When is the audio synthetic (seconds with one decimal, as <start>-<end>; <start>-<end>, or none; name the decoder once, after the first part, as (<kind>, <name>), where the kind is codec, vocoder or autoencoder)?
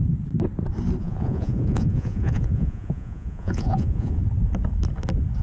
1.0-4.2 (vocoder, Vocos)